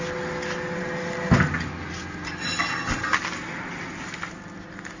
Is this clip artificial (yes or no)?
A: no